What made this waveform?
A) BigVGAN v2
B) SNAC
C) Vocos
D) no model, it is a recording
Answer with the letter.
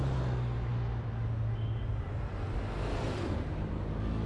D